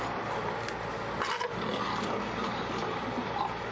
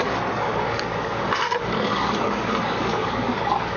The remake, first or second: second